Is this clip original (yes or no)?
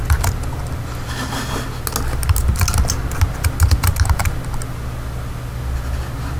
yes